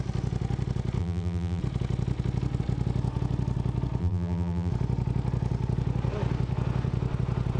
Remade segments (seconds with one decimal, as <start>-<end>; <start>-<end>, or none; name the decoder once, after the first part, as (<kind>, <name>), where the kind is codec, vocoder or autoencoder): 1.0-1.6 (vocoder, BigVGAN v2); 4.0-4.7